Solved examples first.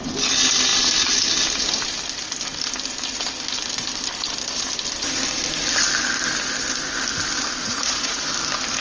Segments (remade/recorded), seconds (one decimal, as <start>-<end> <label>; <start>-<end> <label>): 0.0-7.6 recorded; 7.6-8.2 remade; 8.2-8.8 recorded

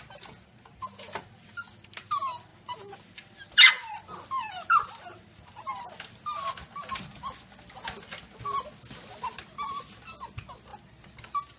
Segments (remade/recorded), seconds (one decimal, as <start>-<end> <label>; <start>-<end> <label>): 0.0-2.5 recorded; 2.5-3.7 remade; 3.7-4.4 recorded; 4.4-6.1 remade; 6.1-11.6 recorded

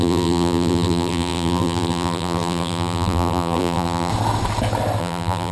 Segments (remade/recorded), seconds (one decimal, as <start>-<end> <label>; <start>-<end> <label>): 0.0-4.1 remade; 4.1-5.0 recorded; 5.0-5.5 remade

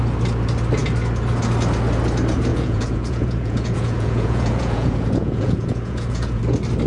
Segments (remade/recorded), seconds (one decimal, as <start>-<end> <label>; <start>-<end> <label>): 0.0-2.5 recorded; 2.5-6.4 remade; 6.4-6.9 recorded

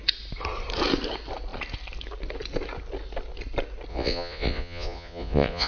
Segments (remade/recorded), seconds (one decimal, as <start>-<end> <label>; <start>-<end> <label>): 0.0-3.9 recorded; 3.9-5.7 remade

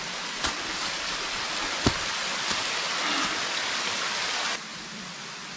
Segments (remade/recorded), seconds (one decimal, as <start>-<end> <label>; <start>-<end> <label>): 0.0-5.6 recorded

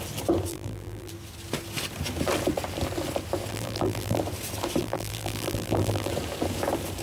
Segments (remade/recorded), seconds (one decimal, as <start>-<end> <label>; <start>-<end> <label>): 0.0-0.5 recorded; 0.5-1.1 remade; 1.1-3.5 recorded; 3.5-4.2 remade; 4.2-4.8 recorded; 4.8-6.1 remade; 6.1-7.0 recorded